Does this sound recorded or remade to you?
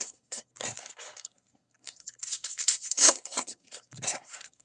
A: remade